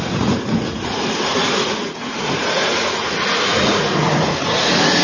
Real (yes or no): no